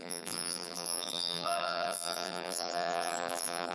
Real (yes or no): no